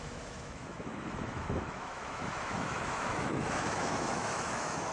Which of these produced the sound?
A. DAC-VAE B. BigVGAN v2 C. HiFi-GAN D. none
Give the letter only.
A